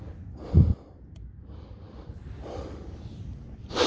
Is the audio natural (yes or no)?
no